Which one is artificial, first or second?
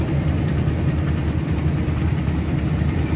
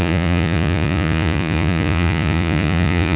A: second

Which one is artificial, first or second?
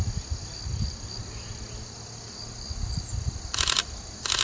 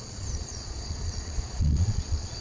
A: second